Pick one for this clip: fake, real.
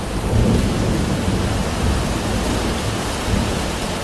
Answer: real